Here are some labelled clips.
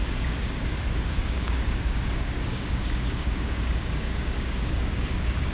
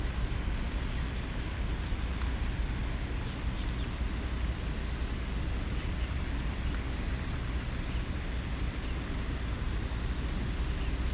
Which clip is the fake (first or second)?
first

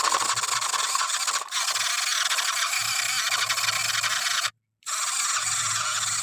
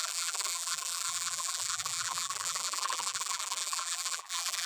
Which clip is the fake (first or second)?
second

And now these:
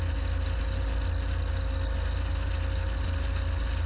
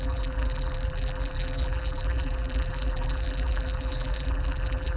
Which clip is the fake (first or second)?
second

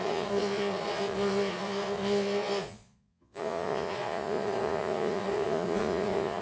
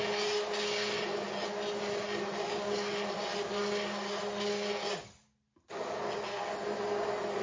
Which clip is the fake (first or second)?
first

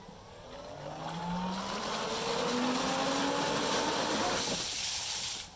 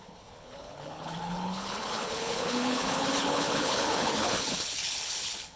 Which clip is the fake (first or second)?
second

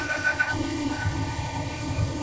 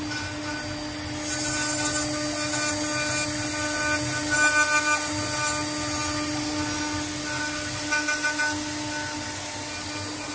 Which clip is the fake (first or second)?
first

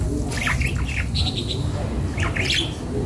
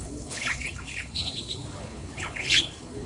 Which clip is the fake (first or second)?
second